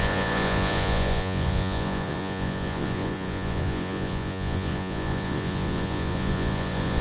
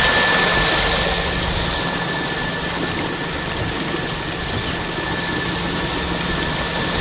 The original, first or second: second